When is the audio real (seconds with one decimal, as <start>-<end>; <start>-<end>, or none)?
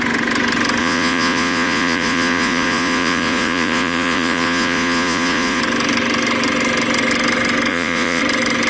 0.0-0.8; 5.6-7.7; 8.2-8.7